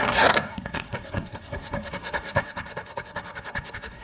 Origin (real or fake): fake